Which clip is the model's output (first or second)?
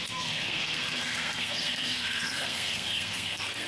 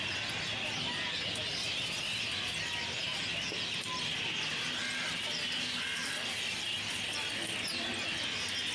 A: first